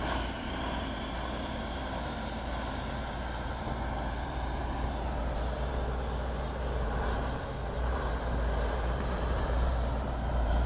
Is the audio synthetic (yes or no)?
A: yes